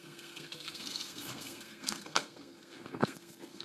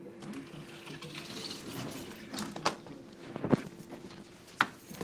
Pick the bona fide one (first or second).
second